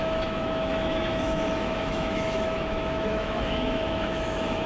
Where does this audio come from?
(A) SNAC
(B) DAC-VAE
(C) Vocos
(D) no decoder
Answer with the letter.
B